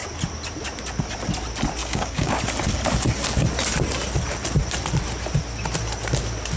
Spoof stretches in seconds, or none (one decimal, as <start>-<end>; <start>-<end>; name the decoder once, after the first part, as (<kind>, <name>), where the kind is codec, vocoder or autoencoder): 1.8-2.4 (codec, DAC)